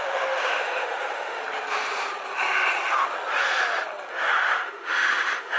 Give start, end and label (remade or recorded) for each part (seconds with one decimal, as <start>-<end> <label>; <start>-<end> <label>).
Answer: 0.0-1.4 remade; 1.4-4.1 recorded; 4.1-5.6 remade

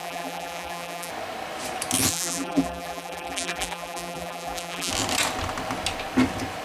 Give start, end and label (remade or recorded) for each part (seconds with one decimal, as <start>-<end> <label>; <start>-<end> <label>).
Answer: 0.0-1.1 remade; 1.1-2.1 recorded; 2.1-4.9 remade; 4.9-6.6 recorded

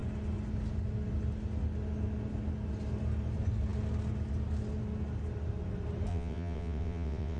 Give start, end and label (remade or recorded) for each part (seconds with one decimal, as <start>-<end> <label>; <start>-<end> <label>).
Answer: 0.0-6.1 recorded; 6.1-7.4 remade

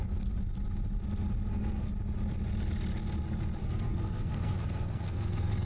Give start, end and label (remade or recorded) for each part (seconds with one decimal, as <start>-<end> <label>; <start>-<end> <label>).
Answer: 0.0-1.5 recorded; 1.5-1.9 remade; 1.9-3.6 recorded; 3.6-5.7 remade

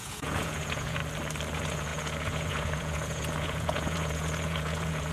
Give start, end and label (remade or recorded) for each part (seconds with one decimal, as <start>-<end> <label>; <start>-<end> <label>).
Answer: 0.0-1.0 remade; 1.0-1.5 recorded; 1.5-5.1 remade

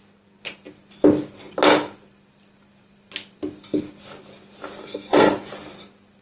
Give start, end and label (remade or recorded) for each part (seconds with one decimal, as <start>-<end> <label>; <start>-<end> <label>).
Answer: 0.0-4.8 recorded; 4.8-5.3 remade; 5.3-6.2 recorded

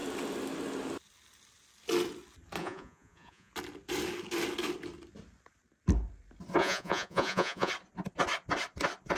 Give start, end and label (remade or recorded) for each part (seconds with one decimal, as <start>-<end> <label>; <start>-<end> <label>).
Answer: 0.0-2.6 recorded; 2.6-3.5 remade; 3.5-6.6 recorded; 6.6-7.7 remade; 7.7-9.2 recorded

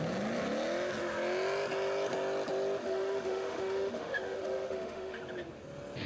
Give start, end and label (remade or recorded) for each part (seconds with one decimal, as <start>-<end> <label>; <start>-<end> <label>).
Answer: 0.0-2.8 recorded; 2.8-5.2 remade; 5.2-6.1 recorded